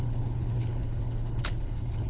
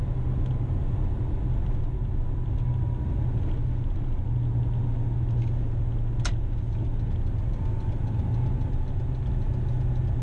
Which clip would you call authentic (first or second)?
second